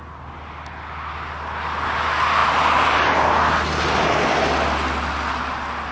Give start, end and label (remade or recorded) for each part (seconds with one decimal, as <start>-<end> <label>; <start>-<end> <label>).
0.0-2.4 recorded; 2.4-3.3 remade; 3.3-5.9 recorded